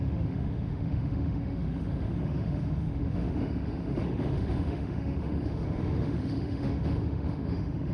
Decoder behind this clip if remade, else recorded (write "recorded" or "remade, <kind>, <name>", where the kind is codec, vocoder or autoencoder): remade, autoencoder, DAC-VAE